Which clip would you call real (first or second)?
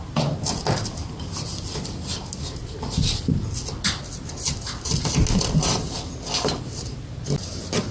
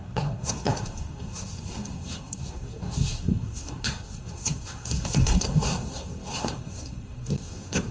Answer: first